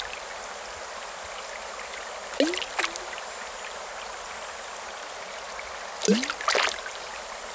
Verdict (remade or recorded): recorded